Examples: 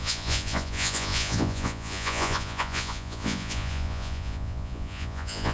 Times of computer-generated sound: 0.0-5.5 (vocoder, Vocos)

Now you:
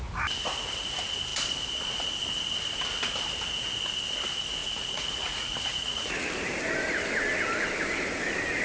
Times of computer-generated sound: 4.6-6.3 (vocoder, Vocos)